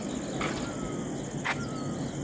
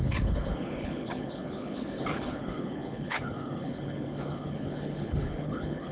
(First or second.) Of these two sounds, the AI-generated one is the second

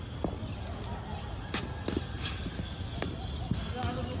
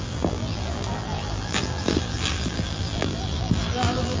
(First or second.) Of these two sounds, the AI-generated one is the second